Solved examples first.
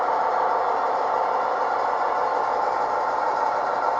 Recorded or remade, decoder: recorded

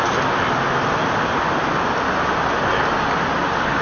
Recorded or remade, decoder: recorded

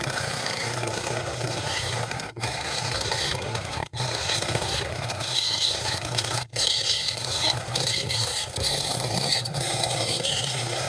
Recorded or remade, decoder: remade, codec, SNAC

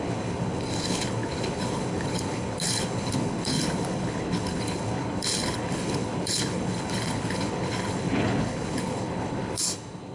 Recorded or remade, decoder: remade, codec, HILCodec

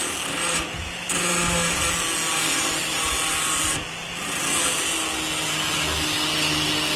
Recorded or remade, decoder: recorded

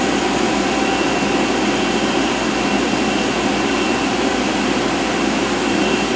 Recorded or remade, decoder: recorded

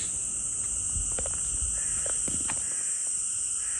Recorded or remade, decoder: recorded